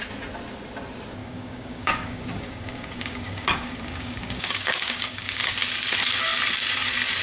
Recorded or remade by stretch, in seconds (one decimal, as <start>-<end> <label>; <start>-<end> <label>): 0.0-1.2 recorded; 1.2-5.5 remade; 5.5-7.2 recorded